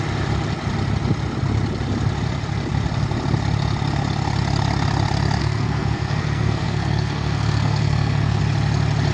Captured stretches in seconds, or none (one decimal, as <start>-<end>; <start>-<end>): 0.0-5.4; 8.4-9.1